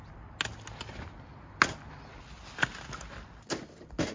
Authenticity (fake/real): real